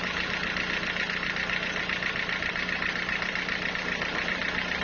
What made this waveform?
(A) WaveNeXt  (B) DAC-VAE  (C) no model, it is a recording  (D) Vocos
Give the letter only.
C